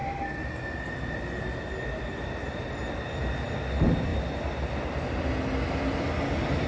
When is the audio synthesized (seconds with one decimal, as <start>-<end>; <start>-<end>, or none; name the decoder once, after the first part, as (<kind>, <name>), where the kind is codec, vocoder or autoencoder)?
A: 4.1-5.3 (vocoder, BigVGAN v2)